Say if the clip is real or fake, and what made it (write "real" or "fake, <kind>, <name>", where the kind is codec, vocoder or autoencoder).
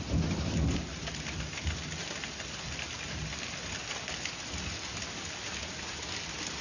real